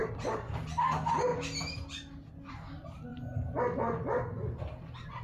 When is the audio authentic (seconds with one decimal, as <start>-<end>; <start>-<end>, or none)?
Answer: 1.3-2.5; 3.1-5.2